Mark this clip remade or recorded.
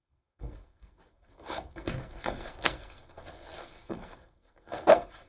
remade